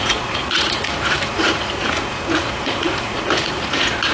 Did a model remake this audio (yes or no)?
yes